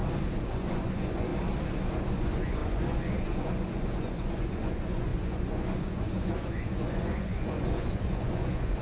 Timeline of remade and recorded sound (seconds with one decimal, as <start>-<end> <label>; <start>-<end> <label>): 0.0-0.5 recorded; 0.5-1.3 remade; 1.3-2.1 recorded; 2.1-8.8 remade